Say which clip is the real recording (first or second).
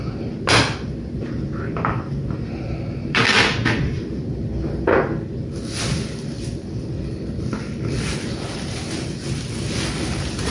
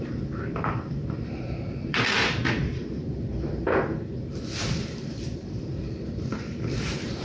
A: first